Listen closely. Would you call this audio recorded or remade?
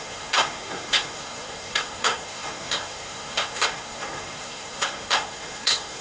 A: remade